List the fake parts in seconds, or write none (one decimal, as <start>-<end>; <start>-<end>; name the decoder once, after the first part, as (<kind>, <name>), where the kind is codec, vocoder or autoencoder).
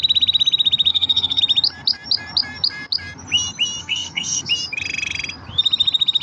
0.9-1.4 (codec, SNAC); 3.8-4.5